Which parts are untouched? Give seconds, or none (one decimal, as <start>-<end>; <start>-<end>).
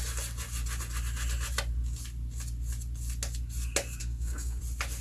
0.0-4.0; 4.6-5.0